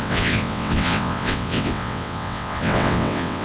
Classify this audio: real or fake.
fake